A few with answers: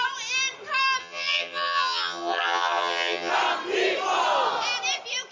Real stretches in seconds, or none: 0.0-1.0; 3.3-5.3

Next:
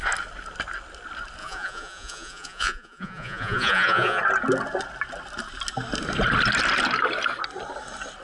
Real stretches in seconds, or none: 0.0-1.4; 4.2-8.2

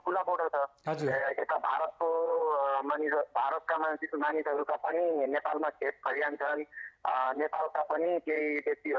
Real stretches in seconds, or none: 0.5-1.0; 2.4-4.3; 8.4-9.0

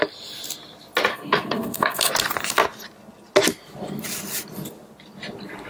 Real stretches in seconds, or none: 0.0-1.1; 2.1-5.7

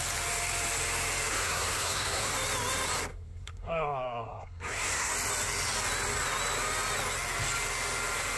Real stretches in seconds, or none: 0.0-1.3; 2.3-3.1; 5.1-8.4

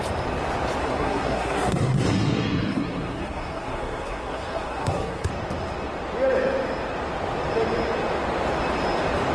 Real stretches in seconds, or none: 0.0-0.8; 5.3-9.3

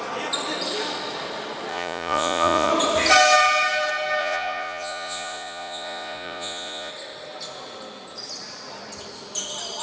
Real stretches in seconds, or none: 0.0-1.7; 2.7-4.2; 6.9-9.8